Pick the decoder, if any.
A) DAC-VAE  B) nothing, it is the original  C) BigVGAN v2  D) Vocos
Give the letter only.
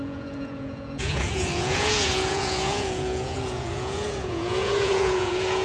D